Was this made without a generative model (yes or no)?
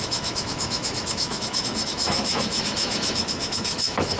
no